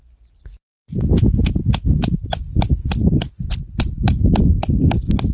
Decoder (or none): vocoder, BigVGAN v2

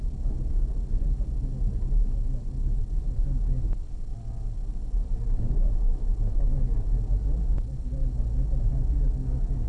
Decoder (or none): none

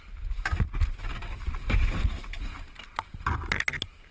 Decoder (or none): none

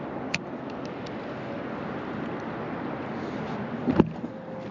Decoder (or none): none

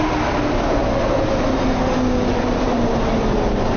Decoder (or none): none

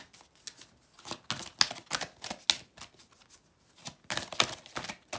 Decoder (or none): none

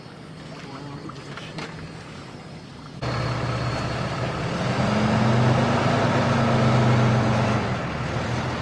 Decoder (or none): none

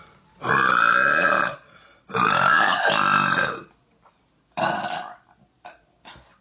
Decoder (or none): none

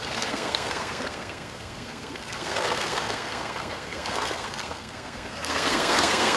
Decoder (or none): codec, SNAC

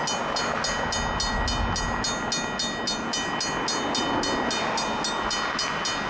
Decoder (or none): none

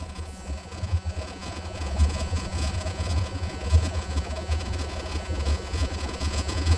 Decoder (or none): vocoder, Vocos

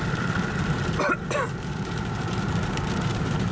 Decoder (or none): vocoder, BigVGAN v2